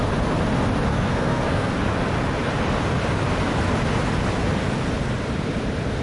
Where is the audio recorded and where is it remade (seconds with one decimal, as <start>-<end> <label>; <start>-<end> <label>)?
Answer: 0.0-0.9 recorded; 0.9-1.7 remade; 1.7-6.0 recorded